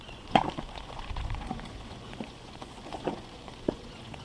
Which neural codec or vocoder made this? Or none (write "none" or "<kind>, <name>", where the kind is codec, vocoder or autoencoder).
vocoder, Vocos